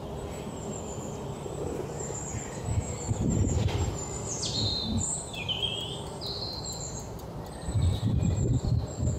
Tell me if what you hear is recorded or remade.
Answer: remade